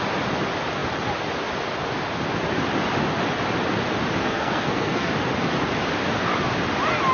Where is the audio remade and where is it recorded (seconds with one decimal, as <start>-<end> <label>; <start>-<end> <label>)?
0.0-4.2 recorded; 4.2-5.1 remade; 5.1-7.1 recorded